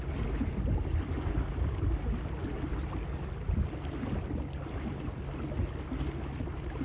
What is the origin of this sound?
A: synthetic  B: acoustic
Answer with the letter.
B